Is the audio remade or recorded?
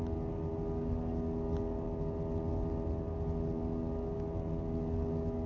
recorded